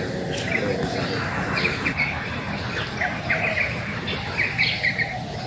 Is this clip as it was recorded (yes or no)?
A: yes